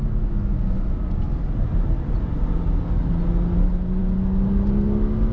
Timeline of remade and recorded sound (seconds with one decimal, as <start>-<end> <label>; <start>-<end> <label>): 0.0-5.3 recorded